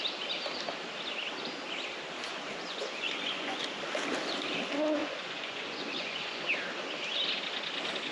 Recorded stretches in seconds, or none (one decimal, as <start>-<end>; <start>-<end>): 0.0-2.3; 3.6-5.0; 6.4-8.1